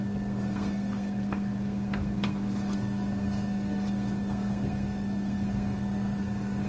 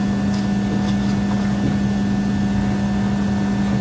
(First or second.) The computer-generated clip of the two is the first